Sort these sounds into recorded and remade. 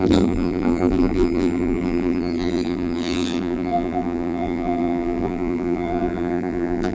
remade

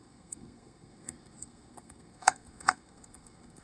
remade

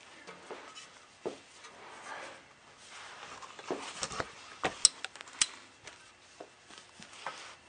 recorded